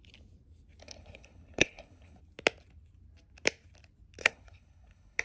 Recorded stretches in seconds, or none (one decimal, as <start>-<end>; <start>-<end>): 0.0-0.8; 2.2-4.2